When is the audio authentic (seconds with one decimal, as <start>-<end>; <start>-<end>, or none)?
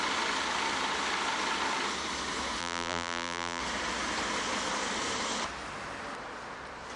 0.0-2.6; 3.6-7.0